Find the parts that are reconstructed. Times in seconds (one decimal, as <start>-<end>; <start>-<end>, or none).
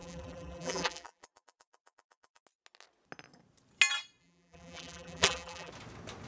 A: 0.0-2.4; 4.2-5.7